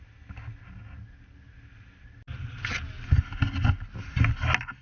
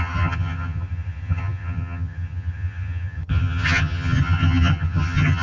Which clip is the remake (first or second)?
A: second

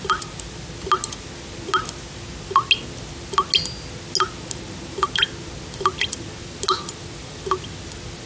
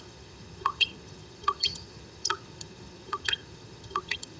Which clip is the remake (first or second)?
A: second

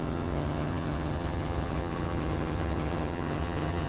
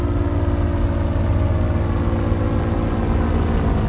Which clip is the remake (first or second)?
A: first